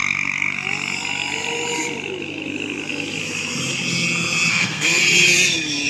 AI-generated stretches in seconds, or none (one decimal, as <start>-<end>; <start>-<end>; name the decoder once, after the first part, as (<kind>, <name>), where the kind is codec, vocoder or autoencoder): 4.5-5.0 (codec, SNAC)